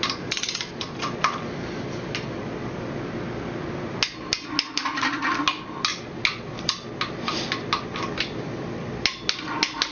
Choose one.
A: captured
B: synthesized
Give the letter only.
A